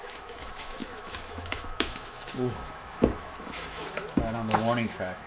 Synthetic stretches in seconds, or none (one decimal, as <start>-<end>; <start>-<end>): 0.0-5.3